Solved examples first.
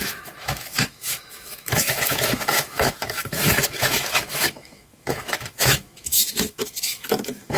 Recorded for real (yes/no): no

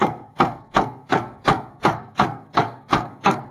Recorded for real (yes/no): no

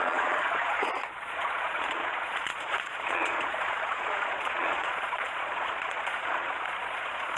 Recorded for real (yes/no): no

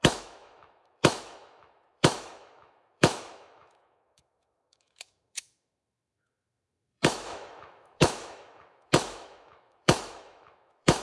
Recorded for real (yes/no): no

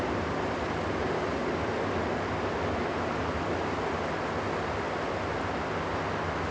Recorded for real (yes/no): yes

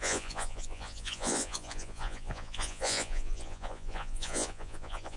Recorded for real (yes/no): no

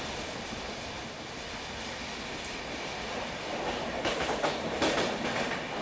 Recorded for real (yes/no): yes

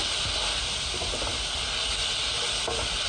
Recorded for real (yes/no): yes